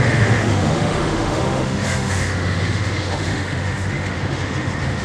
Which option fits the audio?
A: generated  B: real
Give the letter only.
A